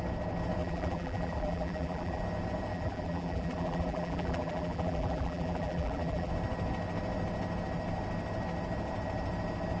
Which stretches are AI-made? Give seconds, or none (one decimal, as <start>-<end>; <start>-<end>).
0.6-2.2; 2.7-6.3